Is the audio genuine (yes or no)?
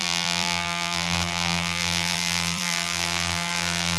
no